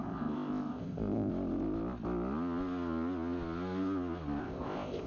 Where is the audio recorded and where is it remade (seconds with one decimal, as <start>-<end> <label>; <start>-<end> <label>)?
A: 0.0-1.3 remade; 1.3-4.4 recorded; 4.4-5.1 remade